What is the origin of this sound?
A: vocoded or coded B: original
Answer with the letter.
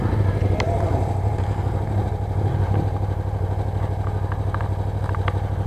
B